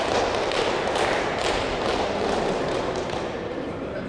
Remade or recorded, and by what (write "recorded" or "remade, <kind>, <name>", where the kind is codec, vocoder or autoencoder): remade, vocoder, BigVGAN v2